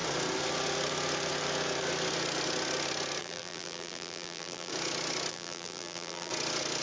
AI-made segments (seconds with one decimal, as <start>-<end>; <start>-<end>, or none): 3.2-4.7; 5.3-6.3